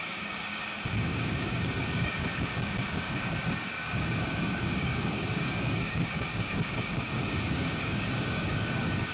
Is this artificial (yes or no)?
yes